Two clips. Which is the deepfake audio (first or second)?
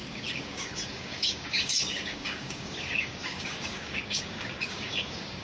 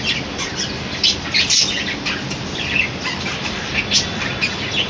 first